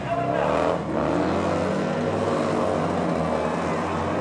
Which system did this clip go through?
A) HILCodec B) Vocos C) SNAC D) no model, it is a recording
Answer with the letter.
D